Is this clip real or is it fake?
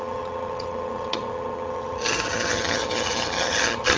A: fake